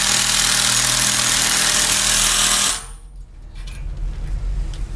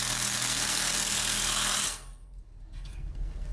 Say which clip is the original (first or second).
first